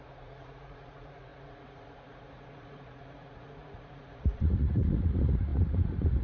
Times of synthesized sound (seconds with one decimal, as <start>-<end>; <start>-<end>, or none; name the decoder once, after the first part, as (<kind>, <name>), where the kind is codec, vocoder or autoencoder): 0.0-6.2 (vocoder, Vocos)